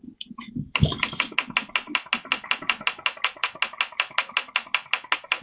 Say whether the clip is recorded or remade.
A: recorded